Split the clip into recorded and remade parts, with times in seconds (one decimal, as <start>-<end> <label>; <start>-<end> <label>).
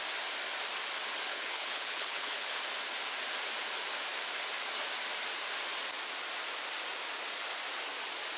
0.0-1.3 recorded; 1.3-2.6 remade; 2.6-8.4 recorded